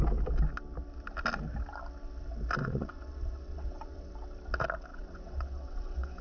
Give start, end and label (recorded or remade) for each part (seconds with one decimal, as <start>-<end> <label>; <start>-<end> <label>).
0.0-2.6 recorded; 2.6-4.1 remade; 4.1-4.9 recorded; 4.9-6.2 remade